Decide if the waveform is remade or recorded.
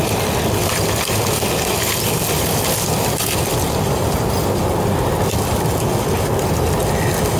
recorded